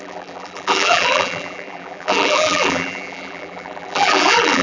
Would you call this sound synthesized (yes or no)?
yes